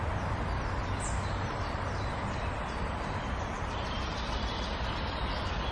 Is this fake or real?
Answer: real